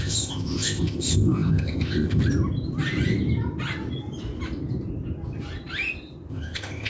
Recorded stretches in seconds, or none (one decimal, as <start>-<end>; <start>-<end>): 2.2-6.3